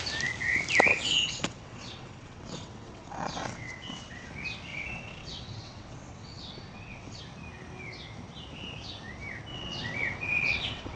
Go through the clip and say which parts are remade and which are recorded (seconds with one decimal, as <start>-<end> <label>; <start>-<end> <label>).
0.0-0.9 recorded; 0.9-4.3 remade; 4.3-4.7 recorded; 4.7-7.2 remade; 7.2-9.5 recorded; 9.5-11.0 remade